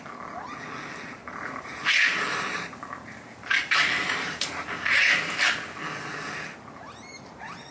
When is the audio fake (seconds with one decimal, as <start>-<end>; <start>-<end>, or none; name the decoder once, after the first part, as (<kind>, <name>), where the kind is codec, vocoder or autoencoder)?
1.2-5.5 (vocoder, BigVGAN v2)